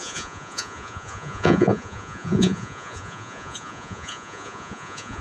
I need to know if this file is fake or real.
fake